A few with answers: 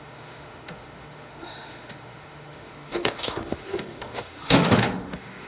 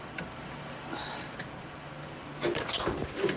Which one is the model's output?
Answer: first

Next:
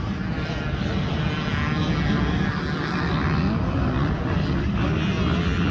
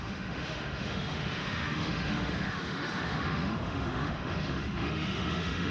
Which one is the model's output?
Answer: second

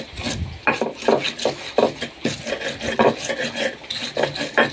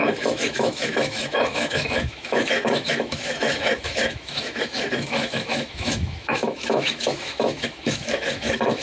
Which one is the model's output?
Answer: second